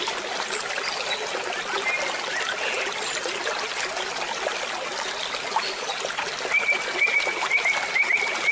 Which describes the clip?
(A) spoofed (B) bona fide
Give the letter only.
B